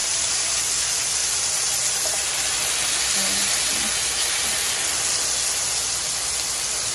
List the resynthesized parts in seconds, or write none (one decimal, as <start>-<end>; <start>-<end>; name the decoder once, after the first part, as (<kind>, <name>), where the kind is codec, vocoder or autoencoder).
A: 0.0-0.7 (vocoder, BigVGAN v2); 1.2-5.0